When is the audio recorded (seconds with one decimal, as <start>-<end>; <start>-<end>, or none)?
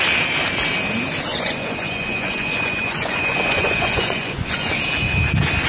0.0-1.3; 4.7-5.7